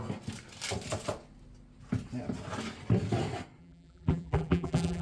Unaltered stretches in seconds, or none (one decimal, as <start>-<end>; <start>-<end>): 0.0-3.6